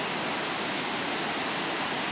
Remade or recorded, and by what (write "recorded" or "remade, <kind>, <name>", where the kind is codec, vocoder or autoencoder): recorded